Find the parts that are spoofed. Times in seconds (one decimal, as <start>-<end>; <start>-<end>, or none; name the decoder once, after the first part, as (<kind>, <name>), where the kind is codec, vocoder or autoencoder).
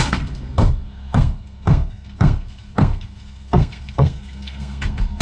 0.0-5.2 (codec, SNAC)